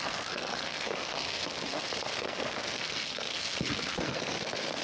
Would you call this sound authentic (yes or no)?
no